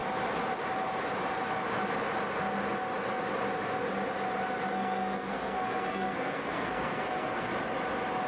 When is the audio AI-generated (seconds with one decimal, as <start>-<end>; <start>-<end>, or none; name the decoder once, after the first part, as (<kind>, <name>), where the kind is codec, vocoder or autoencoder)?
4.7-7.5 (codec, SNAC)